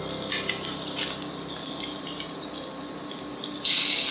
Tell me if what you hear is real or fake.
real